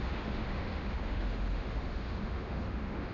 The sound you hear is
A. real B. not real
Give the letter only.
B